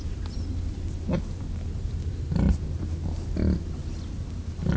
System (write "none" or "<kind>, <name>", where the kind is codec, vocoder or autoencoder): none